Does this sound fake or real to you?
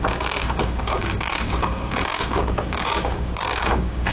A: fake